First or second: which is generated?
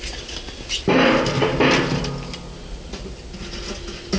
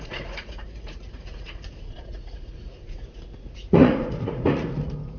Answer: second